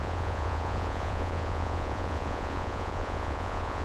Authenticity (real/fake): fake